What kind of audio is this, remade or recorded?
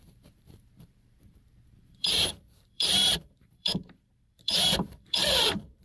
remade